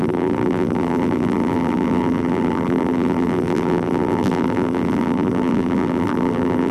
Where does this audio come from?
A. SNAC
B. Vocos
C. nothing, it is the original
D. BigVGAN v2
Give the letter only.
D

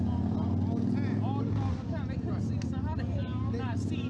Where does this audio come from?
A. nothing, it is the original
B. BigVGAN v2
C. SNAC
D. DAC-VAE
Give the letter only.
A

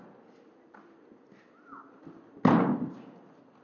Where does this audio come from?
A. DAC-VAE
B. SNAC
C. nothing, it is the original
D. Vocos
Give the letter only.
C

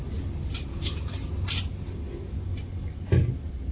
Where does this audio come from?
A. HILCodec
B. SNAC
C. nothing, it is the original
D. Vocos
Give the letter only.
C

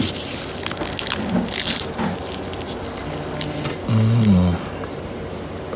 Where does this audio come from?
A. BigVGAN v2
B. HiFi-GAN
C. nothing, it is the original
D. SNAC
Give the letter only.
C